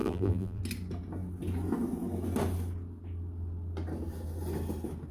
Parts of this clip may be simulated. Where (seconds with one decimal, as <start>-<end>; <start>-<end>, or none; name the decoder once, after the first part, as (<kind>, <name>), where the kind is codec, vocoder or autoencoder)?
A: 0.0-0.6 (vocoder, BigVGAN v2)

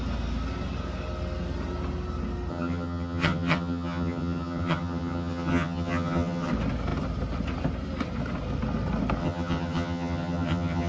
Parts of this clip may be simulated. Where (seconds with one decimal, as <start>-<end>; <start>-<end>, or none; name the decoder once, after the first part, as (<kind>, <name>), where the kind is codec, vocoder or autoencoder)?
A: 2.5-6.5 (vocoder, HiFi-GAN); 9.2-10.9